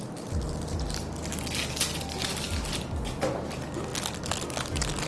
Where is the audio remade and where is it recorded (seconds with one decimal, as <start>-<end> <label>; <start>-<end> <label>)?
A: 0.0-5.1 recorded